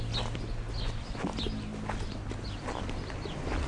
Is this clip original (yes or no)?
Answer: yes